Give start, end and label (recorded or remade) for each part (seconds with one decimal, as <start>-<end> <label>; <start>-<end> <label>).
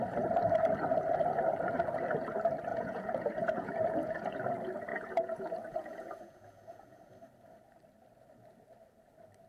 0.0-2.7 recorded; 2.7-4.4 remade; 4.4-4.9 recorded; 4.9-7.0 remade; 7.0-9.5 recorded